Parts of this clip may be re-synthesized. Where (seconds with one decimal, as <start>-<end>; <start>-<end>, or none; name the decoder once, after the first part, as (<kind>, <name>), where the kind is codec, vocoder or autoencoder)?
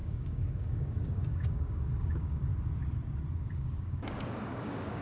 0.0-2.5 (codec, DAC); 3.4-5.0